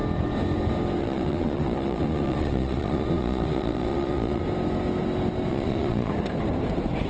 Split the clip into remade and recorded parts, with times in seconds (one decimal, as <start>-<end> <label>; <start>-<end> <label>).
0.0-1.0 recorded; 1.0-4.4 remade; 4.4-5.5 recorded; 5.5-6.1 remade; 6.1-7.1 recorded